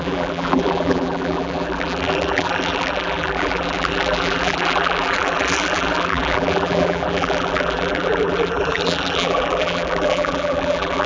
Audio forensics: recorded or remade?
remade